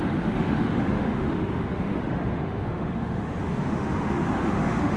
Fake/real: fake